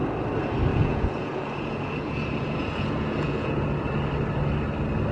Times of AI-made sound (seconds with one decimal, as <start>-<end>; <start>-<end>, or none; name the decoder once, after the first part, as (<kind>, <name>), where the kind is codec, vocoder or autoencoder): 0.7-3.8 (vocoder, Vocos)